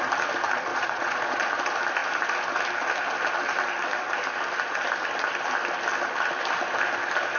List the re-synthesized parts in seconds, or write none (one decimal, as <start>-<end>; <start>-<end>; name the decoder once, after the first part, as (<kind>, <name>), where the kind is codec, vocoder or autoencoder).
0.7-1.5 (vocoder, Vocos)